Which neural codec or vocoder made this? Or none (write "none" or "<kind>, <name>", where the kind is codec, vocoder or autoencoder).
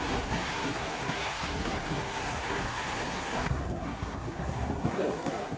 codec, SNAC